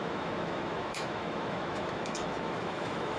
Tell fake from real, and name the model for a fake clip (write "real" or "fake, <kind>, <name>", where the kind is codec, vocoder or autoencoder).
fake, autoencoder, DAC-VAE